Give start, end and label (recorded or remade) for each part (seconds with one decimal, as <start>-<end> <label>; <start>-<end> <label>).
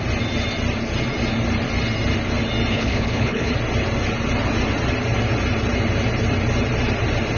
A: 0.0-2.7 recorded; 2.7-3.5 remade; 3.5-7.4 recorded